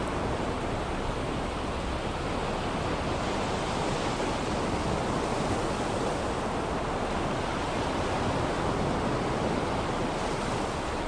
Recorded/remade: recorded